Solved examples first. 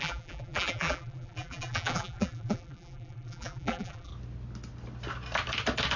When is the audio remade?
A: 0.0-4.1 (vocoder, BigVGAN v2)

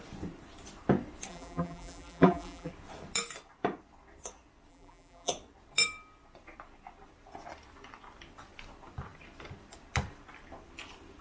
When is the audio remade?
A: 1.3-2.7 (vocoder, BigVGAN v2); 4.7-5.3

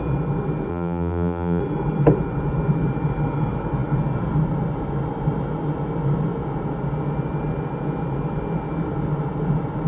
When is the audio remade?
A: 0.7-1.6 (vocoder, BigVGAN v2)

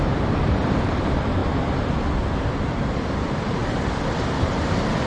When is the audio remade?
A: 0.0-1.4 (vocoder, BigVGAN v2); 2.8-3.6; 4.4-5.1

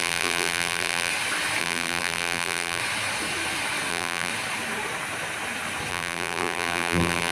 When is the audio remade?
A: 0.0-1.1 (vocoder, BigVGAN v2); 1.6-2.8; 3.9-4.3; 5.9-7.3